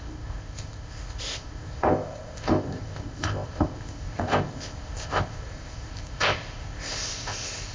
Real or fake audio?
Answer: fake